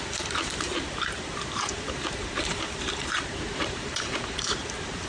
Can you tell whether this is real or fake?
fake